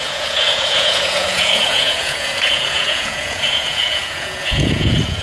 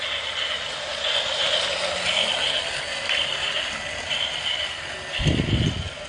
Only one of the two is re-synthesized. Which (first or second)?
first